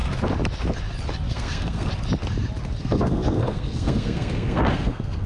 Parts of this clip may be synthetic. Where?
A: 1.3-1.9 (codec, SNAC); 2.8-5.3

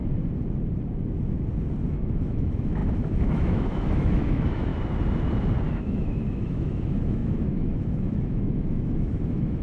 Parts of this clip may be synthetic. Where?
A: 1.9-4.7 (autoencoder, DAC-VAE); 5.7-9.6

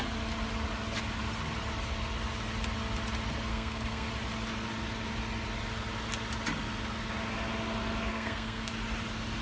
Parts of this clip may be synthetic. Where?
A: 3.5-4.1 (codec, SNAC); 8.1-8.7

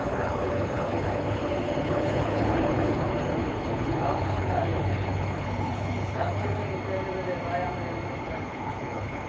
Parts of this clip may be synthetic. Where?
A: 0.0-6.6 (codec, HILCodec); 8.2-9.3

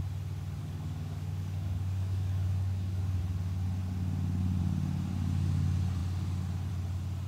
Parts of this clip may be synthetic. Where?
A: 0.6-3.2 (codec, DAC)

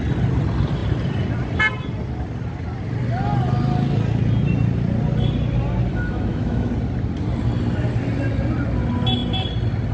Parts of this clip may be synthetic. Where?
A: 5.9-6.7 (autoencoder, DAC-VAE)